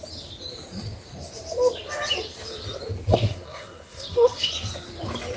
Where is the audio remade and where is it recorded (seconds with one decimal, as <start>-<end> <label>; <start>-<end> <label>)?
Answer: 0.0-3.1 recorded; 3.1-4.5 remade; 4.5-5.4 recorded